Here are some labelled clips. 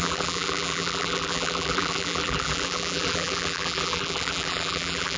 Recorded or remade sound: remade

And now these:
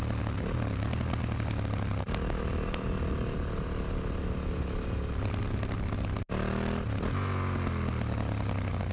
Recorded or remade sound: recorded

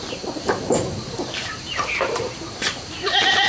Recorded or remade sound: remade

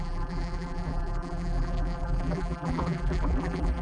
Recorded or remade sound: remade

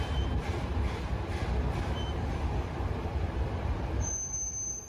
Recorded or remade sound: remade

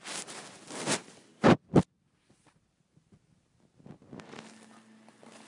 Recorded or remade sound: recorded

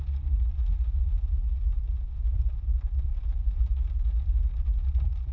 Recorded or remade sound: recorded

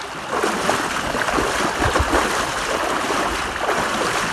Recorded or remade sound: recorded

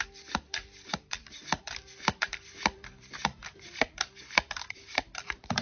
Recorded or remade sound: remade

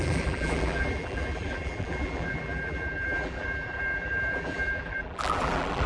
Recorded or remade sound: remade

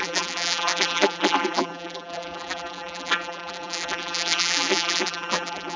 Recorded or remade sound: remade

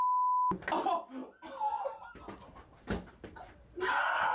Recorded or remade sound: recorded